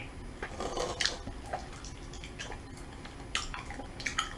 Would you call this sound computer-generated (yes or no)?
no